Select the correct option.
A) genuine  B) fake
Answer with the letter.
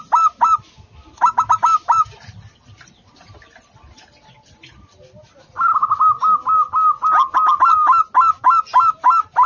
A